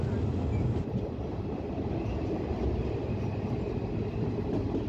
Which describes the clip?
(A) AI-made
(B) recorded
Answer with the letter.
B